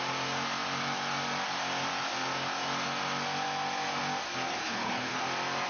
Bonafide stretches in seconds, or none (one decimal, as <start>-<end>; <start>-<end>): 0.0-4.5; 5.2-5.7